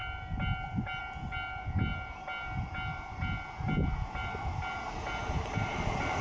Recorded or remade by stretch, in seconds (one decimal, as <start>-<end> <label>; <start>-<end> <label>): 0.0-6.2 recorded